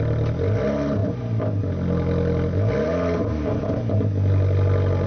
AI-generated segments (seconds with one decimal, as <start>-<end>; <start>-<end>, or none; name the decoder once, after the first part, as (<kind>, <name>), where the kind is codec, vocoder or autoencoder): none